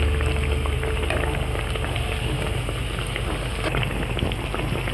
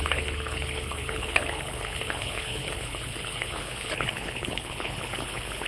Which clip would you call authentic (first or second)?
first